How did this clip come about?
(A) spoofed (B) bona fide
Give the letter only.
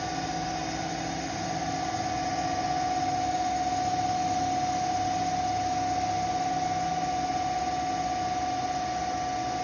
B